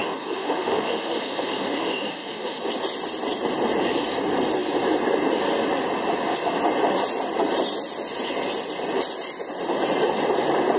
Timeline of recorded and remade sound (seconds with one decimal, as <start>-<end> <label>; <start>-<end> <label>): 0.0-2.6 remade; 2.6-10.8 recorded